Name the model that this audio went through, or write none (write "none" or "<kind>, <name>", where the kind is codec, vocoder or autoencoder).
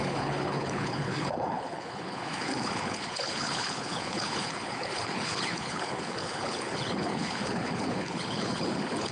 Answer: codec, HILCodec